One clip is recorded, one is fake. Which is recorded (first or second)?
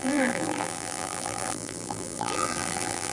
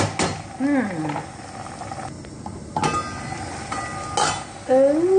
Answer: second